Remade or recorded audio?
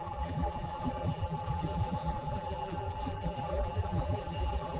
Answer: remade